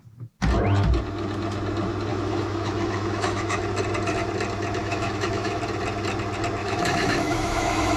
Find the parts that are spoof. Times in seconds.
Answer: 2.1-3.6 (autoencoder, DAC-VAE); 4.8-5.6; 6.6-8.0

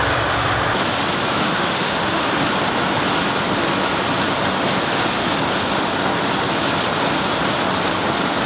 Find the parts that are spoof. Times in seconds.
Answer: 1.3-2.3 (autoencoder, DAC-VAE)

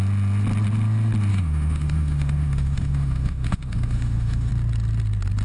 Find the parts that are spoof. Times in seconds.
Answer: 1.3-4.5 (autoencoder, DAC-VAE)

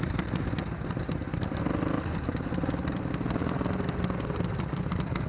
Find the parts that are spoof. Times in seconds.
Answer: none

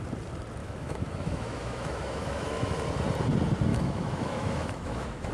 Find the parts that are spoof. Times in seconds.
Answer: 0.6-2.8 (autoencoder, DAC-VAE); 3.7-5.3

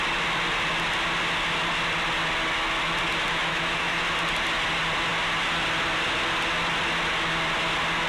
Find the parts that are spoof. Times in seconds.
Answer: 3.5-4.0 (autoencoder, DAC-VAE)

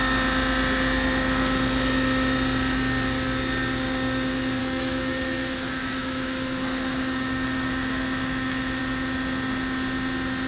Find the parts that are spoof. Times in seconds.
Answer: 4.6-8.8 (autoencoder, DAC-VAE)

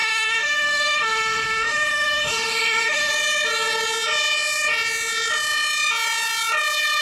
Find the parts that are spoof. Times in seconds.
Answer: 0.0-3.1 (autoencoder, DAC-VAE)